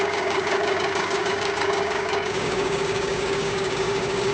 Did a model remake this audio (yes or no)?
yes